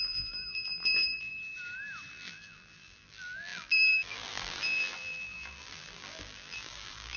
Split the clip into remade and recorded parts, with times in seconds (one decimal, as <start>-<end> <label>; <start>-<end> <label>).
0.0-1.3 remade; 1.3-2.1 recorded; 2.1-7.2 remade